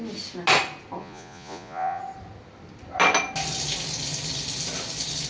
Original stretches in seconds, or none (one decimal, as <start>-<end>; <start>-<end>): 0.0-1.0; 2.0-5.3

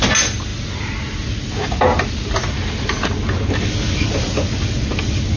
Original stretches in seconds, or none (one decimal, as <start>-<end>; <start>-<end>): 0.0-5.4

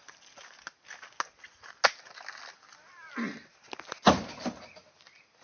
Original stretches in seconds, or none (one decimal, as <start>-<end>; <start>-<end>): 0.0-5.4

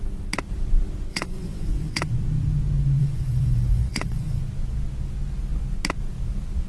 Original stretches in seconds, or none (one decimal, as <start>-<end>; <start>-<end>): 0.0-1.1; 2.1-3.0; 4.4-6.7

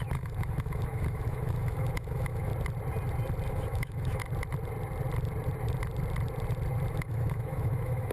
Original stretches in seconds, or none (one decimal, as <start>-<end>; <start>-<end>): 2.5-3.5; 4.2-6.9

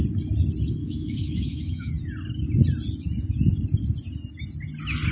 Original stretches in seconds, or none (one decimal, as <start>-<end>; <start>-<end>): 0.0-0.8; 1.9-5.1